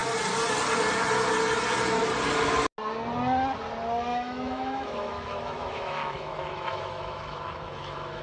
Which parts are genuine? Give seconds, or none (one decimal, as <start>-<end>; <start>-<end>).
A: 0.0-4.1